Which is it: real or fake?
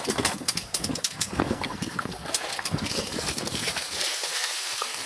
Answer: fake